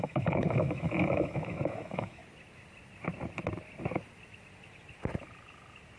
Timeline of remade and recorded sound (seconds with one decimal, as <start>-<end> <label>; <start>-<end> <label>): 0.0-2.2 remade; 2.2-6.0 recorded